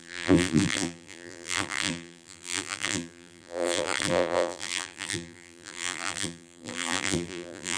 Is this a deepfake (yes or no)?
yes